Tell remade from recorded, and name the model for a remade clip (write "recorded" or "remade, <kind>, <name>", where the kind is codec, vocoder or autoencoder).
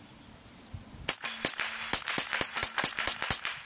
recorded